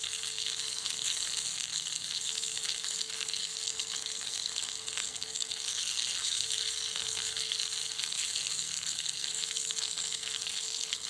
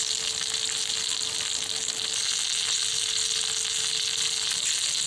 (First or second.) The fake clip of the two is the first